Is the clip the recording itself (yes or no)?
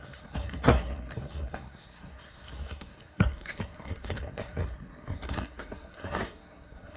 no